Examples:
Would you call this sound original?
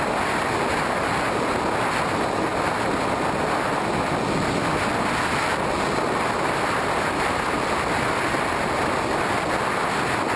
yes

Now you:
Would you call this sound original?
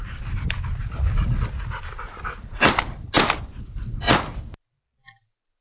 yes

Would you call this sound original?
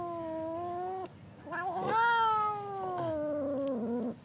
yes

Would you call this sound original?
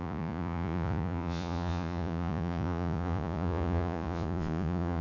no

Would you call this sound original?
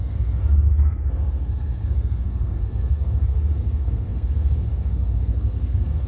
no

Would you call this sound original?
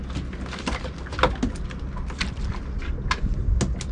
yes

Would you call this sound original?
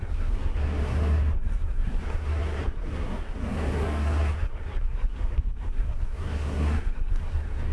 no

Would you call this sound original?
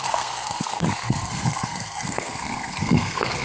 no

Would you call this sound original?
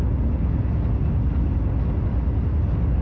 yes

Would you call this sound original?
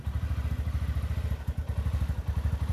yes